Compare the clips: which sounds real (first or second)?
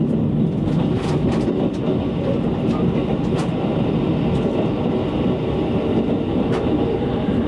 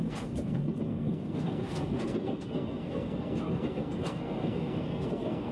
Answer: first